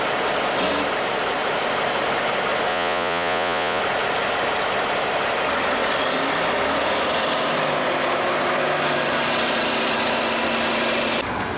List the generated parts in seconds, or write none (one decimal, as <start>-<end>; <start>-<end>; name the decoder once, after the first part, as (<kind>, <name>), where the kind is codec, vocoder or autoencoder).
2.7-3.8 (vocoder, Vocos)